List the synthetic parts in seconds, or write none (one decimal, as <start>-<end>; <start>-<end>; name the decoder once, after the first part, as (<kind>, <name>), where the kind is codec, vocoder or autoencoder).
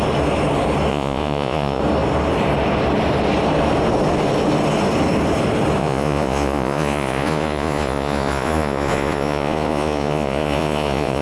0.9-1.8 (vocoder, Vocos); 5.8-11.2